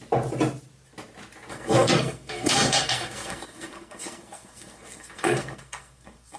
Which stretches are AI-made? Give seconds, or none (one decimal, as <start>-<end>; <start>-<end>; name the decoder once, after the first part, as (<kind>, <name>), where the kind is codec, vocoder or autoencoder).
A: 1.5-6.4 (codec, SNAC)